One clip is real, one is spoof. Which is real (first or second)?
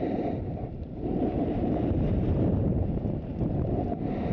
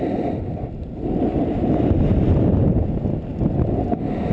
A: second